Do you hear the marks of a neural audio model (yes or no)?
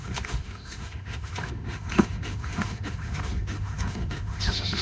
yes